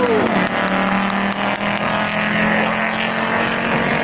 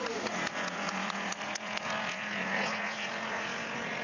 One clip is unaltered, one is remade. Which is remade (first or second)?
second